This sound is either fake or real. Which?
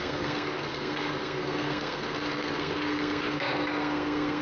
fake